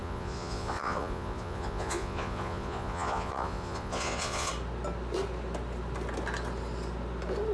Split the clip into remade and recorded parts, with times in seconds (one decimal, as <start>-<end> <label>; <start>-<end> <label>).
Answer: 0.0-4.5 remade; 4.5-7.5 recorded